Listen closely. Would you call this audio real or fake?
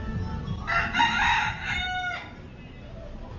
real